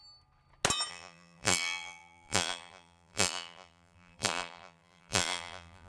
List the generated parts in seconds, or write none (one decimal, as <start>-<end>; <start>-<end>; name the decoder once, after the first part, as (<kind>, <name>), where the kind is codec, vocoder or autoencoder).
0.9-5.9 (vocoder, BigVGAN v2)